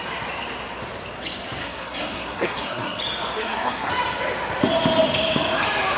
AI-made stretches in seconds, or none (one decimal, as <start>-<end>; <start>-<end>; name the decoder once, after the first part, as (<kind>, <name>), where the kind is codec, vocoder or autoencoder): 1.6-3.0 (codec, SNAC); 3.4-3.9